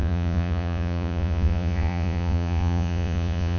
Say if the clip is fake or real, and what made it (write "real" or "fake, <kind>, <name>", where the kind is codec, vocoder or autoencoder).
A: fake, vocoder, Vocos